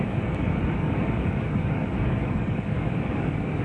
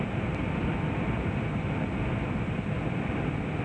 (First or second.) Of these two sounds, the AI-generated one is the first